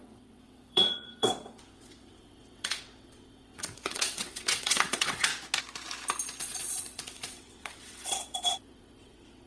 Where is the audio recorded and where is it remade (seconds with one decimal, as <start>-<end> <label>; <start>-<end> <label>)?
0.0-5.3 remade; 5.3-6.4 recorded; 6.4-9.5 remade